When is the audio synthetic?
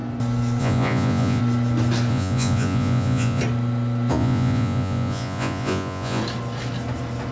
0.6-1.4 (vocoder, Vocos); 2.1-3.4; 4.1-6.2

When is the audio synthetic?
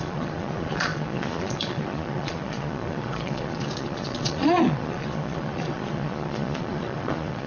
0.0-7.5 (vocoder, Vocos)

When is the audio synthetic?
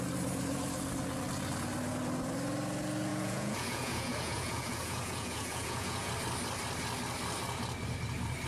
3.1-6.1 (vocoder, Vocos)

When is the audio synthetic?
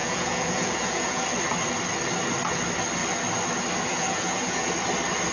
0.0-1.2 (vocoder, Vocos); 3.9-4.7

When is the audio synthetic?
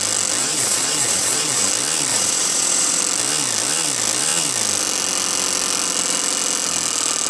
0.4-1.7 (vocoder, Vocos); 2.1-3.0